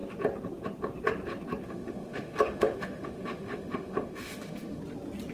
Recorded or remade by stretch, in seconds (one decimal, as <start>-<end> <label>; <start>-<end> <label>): 0.0-1.6 recorded; 1.6-4.8 remade; 4.8-5.3 recorded